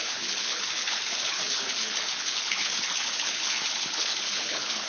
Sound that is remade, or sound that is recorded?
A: remade